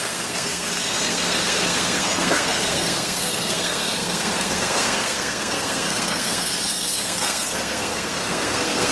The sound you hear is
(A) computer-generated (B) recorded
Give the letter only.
A